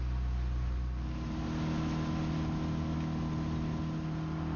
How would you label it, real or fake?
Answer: real